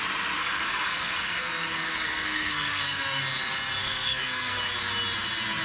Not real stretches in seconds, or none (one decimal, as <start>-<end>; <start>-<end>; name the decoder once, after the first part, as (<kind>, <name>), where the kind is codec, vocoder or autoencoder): 0.4-3.2 (codec, SNAC); 3.8-4.6

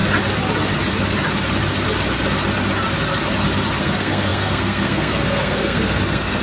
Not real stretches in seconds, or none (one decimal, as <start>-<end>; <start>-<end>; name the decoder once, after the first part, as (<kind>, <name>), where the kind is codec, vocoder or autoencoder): 3.8-6.4 (codec, SNAC)

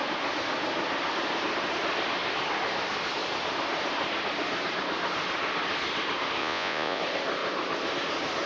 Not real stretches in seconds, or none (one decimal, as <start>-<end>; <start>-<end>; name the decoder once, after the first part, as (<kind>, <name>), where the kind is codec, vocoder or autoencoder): 6.4-7.0 (vocoder, Vocos)

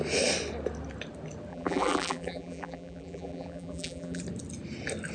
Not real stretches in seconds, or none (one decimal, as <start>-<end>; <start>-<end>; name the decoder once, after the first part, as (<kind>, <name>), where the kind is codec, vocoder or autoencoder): 1.5-4.2 (vocoder, BigVGAN v2)

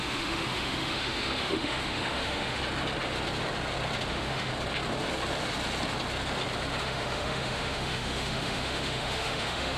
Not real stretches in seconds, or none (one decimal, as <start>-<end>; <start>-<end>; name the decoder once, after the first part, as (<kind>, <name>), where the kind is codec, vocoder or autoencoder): 0.0-2.6 (autoencoder, DAC-VAE); 4.1-4.5; 6.8-9.8

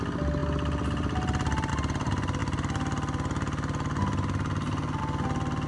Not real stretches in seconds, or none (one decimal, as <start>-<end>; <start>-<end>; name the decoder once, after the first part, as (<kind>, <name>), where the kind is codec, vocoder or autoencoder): none